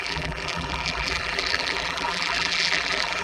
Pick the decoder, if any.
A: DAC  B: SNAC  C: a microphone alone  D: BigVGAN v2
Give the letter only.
D